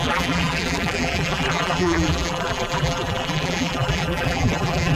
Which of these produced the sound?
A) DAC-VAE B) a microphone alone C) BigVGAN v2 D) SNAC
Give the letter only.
C